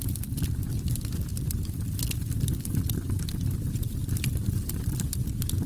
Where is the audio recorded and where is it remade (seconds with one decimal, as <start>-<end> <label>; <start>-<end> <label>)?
0.0-5.7 recorded